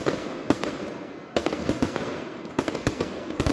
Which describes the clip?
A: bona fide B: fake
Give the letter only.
B